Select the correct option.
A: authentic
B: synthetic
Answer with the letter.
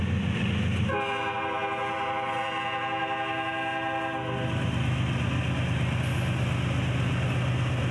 A